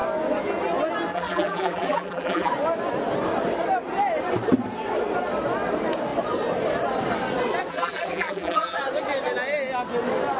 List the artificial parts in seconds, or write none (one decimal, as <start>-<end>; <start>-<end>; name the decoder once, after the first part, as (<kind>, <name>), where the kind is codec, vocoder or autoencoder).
1.1-2.5 (vocoder, BigVGAN v2); 7.7-8.8